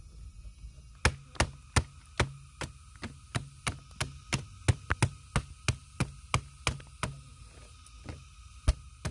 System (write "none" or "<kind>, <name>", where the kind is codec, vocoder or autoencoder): none